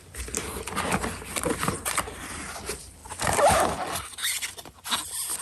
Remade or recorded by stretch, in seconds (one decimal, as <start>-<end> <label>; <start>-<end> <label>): 0.0-5.4 recorded